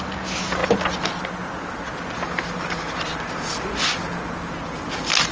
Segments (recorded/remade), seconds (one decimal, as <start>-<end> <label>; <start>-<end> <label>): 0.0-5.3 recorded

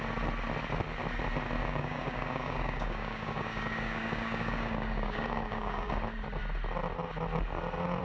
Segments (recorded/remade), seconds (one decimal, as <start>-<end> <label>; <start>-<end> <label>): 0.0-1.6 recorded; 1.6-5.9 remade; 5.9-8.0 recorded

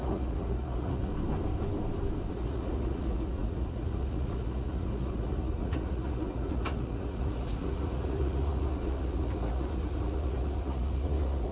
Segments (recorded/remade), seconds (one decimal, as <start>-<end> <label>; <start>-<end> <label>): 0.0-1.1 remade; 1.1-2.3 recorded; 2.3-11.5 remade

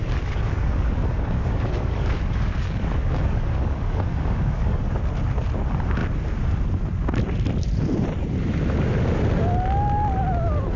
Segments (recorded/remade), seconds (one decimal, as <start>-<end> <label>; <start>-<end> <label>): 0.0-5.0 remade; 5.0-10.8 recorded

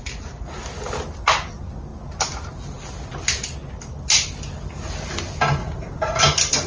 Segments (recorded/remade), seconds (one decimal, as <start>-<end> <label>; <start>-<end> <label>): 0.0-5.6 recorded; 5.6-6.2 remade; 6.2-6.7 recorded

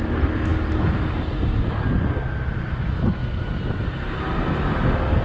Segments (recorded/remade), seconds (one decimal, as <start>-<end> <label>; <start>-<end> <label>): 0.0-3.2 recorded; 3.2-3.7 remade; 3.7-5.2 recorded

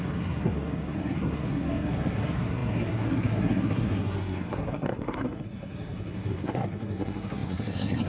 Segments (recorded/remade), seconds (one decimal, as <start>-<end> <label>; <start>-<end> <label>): 0.0-8.1 remade